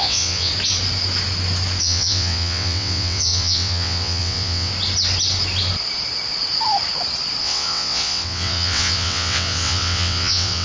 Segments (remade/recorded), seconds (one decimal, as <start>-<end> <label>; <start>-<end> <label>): 0.0-0.5 remade; 0.5-1.8 recorded; 1.8-4.7 remade; 4.7-7.4 recorded; 7.4-10.6 remade